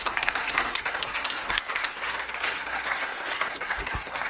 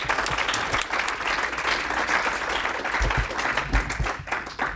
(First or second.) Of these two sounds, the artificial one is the first